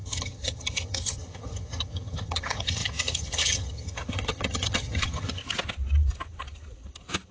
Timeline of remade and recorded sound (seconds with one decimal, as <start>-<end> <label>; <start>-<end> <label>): 0.0-5.4 remade; 5.4-7.3 recorded

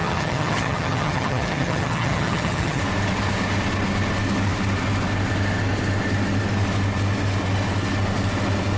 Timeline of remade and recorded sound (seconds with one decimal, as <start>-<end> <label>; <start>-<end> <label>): 0.0-2.8 remade; 2.8-8.8 recorded

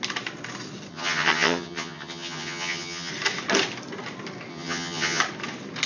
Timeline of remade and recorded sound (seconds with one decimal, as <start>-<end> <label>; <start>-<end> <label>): 0.0-0.9 recorded; 0.9-3.1 remade; 3.1-4.5 recorded; 4.5-5.2 remade; 5.2-5.9 recorded

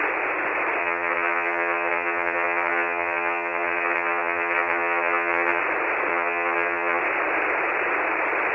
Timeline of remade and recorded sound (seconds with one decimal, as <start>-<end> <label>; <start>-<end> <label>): 0.0-0.8 recorded; 0.8-5.6 remade; 5.6-6.1 recorded; 6.1-7.0 remade; 7.0-8.5 recorded